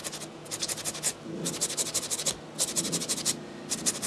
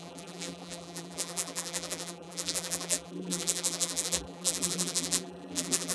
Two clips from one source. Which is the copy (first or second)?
second